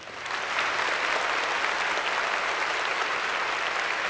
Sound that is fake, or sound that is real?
real